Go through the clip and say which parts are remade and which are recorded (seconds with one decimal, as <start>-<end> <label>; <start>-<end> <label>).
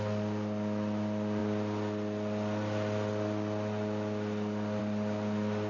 0.0-5.7 recorded